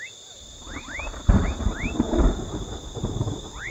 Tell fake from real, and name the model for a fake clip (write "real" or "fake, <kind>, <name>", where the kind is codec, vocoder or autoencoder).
fake, vocoder, BigVGAN v2